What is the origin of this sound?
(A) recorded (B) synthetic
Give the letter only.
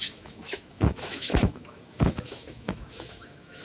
B